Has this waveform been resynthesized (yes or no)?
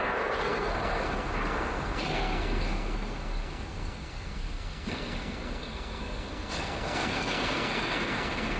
yes